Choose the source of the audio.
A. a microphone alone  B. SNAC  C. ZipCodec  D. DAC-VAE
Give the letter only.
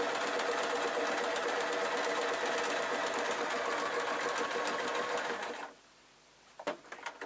A